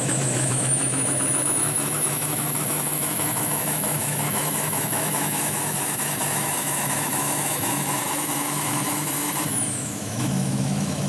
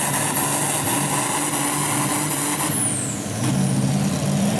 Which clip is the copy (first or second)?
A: first